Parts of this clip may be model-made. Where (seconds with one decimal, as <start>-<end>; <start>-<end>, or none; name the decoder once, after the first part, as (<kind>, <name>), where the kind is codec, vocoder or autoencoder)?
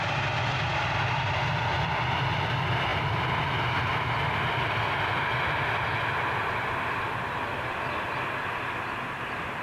none